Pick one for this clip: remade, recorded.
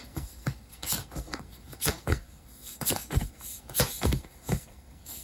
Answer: remade